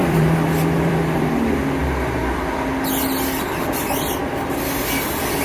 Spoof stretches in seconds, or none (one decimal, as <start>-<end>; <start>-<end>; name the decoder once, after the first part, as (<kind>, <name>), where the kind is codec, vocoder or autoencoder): 0.0-1.3 (vocoder, BigVGAN v2)